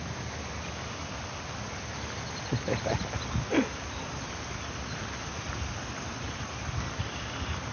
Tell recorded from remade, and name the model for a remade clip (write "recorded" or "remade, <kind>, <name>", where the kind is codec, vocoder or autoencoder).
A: recorded